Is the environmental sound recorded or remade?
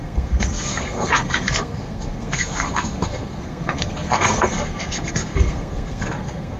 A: remade